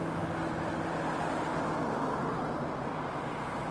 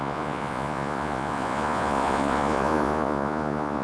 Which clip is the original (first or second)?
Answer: first